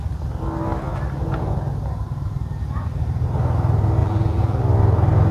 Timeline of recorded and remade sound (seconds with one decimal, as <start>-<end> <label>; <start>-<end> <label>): 0.0-4.0 recorded; 4.0-4.6 remade; 4.6-5.3 recorded